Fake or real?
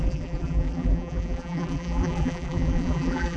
fake